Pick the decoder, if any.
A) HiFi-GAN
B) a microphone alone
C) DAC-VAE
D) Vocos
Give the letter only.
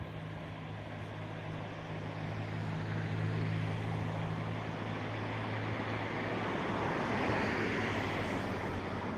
B